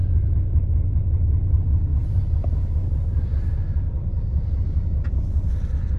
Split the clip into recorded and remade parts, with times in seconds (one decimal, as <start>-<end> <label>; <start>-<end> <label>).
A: 0.0-1.0 remade; 1.0-1.9 recorded; 1.9-5.5 remade; 5.5-6.0 recorded